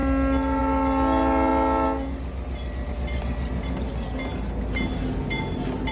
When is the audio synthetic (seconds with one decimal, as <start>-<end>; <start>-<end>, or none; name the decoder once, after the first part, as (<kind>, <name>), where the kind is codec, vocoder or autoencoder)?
none